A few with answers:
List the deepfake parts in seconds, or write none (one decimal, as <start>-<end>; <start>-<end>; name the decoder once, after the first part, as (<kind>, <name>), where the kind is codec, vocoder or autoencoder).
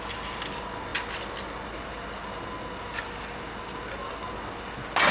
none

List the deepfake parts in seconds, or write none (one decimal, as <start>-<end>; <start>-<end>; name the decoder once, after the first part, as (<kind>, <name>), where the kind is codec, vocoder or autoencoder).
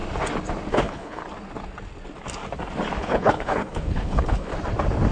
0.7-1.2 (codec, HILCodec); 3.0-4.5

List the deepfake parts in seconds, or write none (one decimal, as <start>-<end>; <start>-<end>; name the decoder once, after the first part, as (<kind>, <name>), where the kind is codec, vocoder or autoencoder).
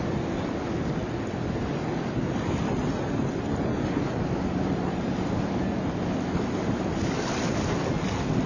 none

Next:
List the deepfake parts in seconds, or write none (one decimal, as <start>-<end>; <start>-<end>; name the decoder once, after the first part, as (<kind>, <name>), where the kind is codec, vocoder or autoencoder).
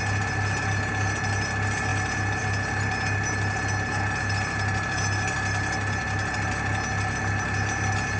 none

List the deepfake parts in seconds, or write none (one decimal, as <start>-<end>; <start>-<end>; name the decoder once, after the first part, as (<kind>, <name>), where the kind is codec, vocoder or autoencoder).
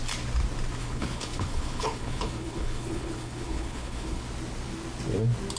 0.8-4.2 (codec, HILCodec)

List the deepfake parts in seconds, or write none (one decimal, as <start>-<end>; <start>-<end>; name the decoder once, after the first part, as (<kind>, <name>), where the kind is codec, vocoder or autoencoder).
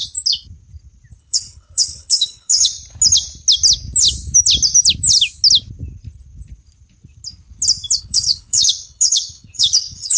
1.2-2.8 (codec, HILCodec); 8.0-10.2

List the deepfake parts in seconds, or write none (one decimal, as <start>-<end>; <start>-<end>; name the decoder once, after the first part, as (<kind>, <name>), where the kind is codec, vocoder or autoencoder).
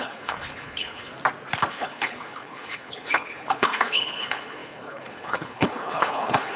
0.0-1.1 (codec, HILCodec); 1.7-6.6